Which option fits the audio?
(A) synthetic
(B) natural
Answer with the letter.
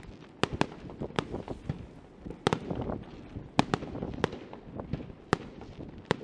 B